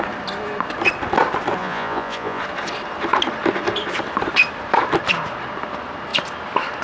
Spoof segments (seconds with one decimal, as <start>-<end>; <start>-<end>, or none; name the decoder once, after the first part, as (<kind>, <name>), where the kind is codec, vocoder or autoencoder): 1.6-2.4 (vocoder, Vocos)